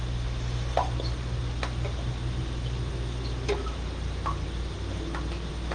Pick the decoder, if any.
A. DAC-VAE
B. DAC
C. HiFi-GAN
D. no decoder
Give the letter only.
D